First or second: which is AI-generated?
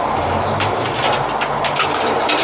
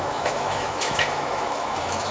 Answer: second